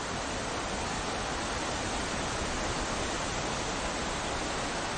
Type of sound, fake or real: real